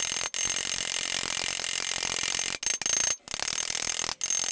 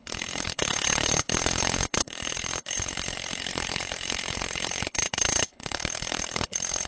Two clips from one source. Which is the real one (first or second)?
first